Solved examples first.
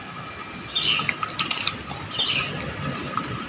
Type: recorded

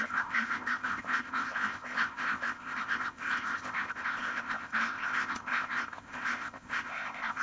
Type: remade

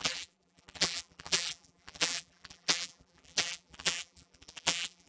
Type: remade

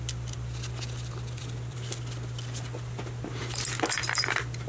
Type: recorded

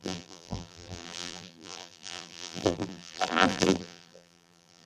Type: remade